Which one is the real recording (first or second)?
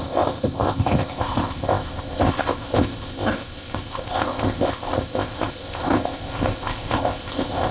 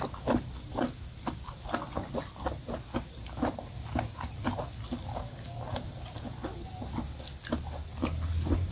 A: second